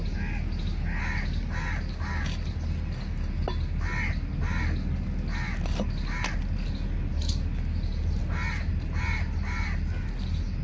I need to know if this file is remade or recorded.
recorded